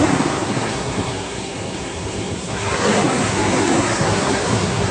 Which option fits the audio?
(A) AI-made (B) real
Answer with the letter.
A